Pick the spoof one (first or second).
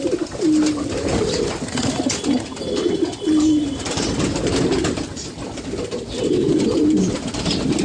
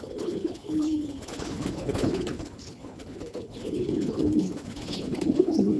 second